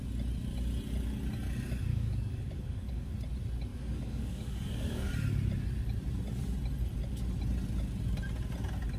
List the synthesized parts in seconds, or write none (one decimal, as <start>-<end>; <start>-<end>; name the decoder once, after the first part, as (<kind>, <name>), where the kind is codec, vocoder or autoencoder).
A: 1.9-3.1 (codec, DAC); 3.7-5.1